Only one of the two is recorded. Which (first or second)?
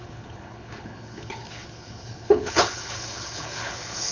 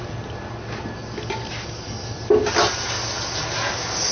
second